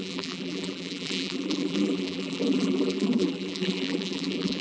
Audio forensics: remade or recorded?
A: remade